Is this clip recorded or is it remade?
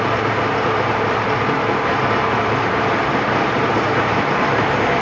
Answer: recorded